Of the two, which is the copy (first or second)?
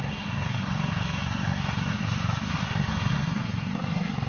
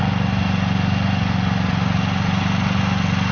first